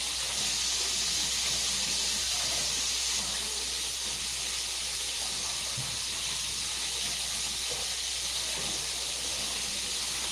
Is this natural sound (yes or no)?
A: yes